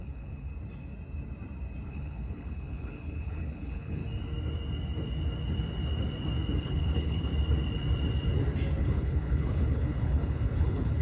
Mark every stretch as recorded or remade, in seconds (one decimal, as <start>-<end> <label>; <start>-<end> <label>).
0.0-0.5 remade; 0.5-1.9 recorded; 1.9-4.0 remade; 4.0-6.6 recorded; 6.6-7.3 remade; 7.3-8.8 recorded; 8.8-11.0 remade